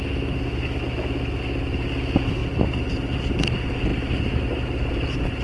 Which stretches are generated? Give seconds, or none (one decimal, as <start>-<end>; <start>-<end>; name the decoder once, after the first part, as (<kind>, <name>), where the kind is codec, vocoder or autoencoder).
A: none